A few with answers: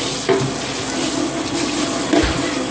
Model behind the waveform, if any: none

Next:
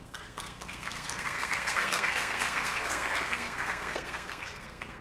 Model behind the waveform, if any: codec, SNAC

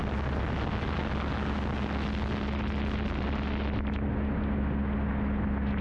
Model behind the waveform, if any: none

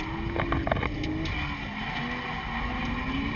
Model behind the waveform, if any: none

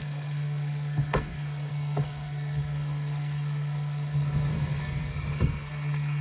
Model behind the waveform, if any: codec, SNAC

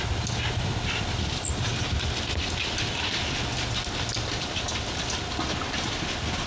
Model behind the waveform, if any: none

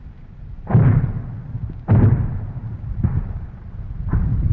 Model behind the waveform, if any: none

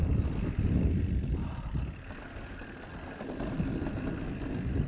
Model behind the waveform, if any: none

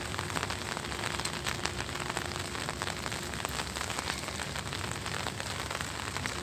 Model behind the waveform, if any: none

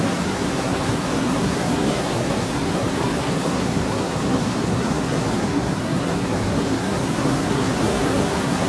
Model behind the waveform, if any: codec, SNAC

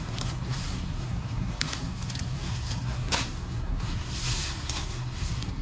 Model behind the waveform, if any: codec, SNAC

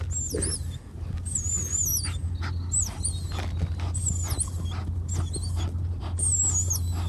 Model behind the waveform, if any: none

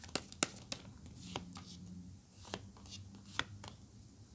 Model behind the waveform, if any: none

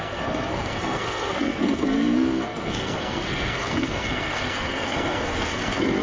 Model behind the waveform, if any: codec, SNAC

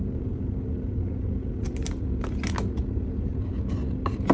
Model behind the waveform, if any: none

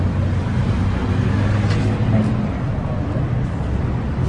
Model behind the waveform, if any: none